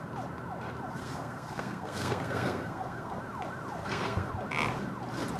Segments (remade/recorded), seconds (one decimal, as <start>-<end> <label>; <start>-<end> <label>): 0.0-1.0 recorded; 1.0-3.2 remade; 3.2-3.8 recorded; 3.8-4.3 remade; 4.3-5.4 recorded